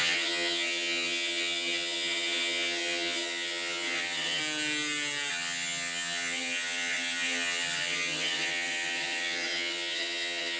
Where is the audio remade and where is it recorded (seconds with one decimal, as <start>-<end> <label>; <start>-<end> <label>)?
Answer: 0.0-4.4 remade; 4.4-5.3 recorded; 5.3-10.6 remade